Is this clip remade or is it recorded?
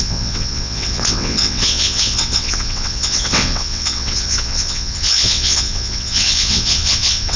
remade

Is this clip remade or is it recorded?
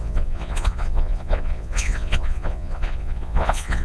remade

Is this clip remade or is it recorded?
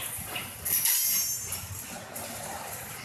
recorded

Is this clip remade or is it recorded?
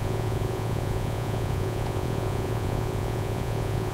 remade